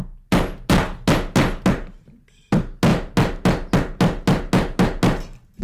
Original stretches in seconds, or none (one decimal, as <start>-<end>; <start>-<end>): 0.0-5.6